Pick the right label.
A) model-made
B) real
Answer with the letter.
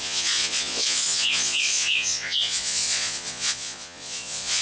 A